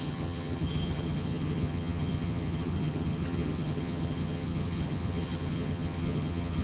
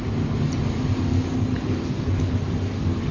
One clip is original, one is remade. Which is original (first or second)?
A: second